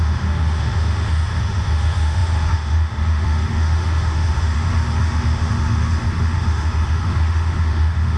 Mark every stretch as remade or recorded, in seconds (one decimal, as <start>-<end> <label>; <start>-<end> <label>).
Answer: 0.0-8.2 remade